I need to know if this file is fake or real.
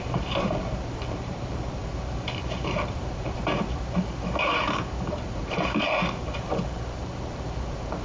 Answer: fake